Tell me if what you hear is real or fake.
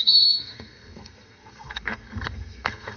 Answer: fake